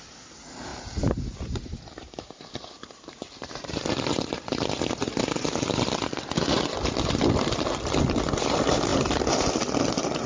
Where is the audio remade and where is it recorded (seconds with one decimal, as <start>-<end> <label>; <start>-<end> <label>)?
0.0-0.7 recorded; 0.7-5.2 remade; 5.2-10.3 recorded